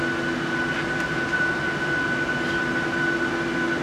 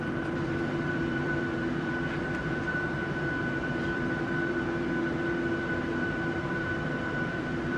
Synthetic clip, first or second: second